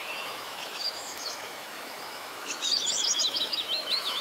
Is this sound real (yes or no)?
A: no